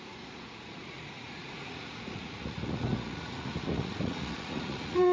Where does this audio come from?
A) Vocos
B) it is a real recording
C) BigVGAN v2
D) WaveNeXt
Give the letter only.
A